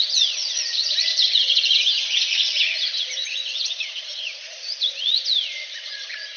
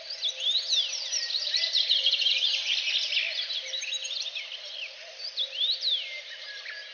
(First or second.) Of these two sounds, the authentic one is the second